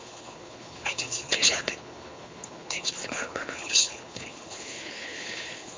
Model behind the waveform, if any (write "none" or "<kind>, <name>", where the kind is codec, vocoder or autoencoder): codec, HILCodec